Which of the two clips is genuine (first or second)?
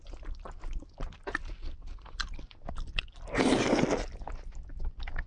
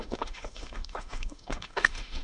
first